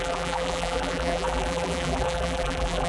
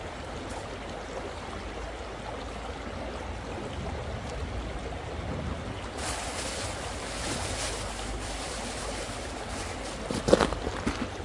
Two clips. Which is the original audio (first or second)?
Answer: second